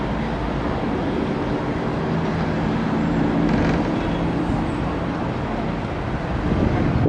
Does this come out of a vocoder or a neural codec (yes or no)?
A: no